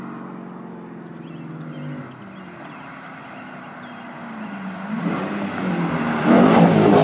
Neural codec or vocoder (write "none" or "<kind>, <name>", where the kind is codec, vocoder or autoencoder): none